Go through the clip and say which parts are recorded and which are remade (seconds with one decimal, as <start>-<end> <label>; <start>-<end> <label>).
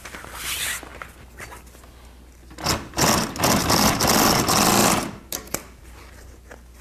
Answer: 0.0-6.8 recorded